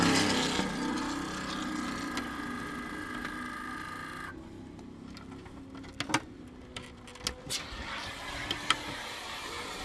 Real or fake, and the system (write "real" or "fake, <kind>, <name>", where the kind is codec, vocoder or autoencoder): real